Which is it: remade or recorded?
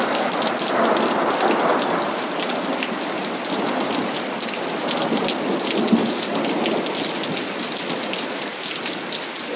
recorded